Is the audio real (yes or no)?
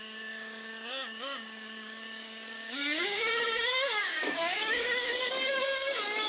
no